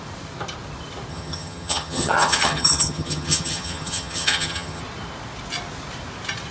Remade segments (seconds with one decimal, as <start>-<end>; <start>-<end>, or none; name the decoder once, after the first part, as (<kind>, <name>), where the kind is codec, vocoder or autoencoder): 1.1-4.8 (vocoder, HiFi-GAN)